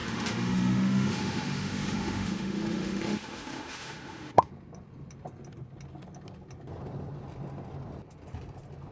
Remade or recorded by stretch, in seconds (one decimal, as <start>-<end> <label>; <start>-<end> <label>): 0.0-4.5 remade; 4.5-8.9 recorded